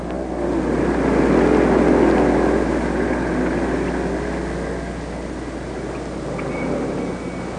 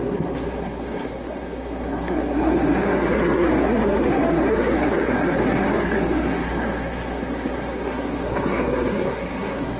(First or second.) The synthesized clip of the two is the second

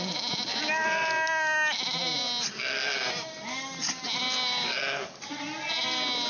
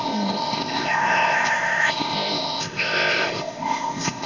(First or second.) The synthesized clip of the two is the second